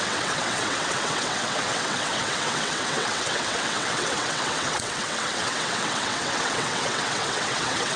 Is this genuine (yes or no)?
no